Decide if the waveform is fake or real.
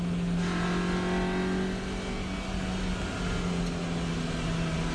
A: real